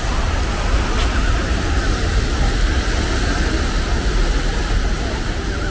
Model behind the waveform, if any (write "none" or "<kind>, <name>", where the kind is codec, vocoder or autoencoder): none